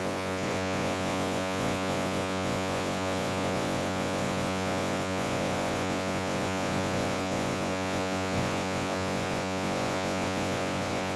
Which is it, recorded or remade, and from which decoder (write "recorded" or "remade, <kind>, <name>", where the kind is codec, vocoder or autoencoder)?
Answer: remade, vocoder, Vocos